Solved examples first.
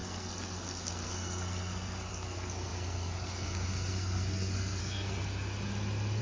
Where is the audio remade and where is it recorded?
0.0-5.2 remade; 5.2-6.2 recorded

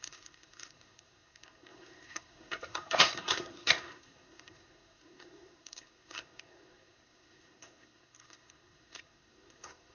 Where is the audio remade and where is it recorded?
0.0-9.9 remade